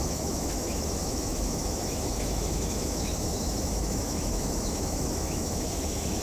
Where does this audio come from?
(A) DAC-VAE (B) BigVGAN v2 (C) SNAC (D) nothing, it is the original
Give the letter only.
A